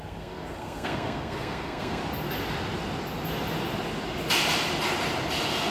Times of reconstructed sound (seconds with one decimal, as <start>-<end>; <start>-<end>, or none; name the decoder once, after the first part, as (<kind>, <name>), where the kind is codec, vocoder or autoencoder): 0.0-2.0 (codec, SNAC)